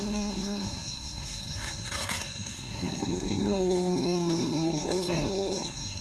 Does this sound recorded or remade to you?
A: remade